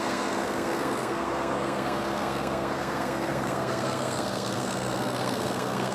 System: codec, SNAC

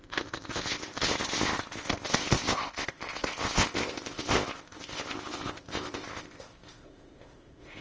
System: codec, ZipCodec